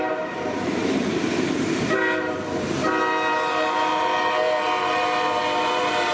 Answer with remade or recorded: remade